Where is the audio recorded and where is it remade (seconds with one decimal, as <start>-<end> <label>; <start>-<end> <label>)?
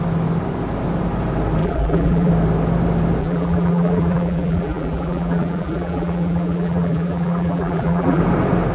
0.0-1.6 recorded; 1.6-2.3 remade; 2.3-3.2 recorded; 3.2-8.2 remade; 8.2-8.7 recorded